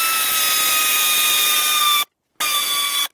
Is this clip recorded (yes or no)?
yes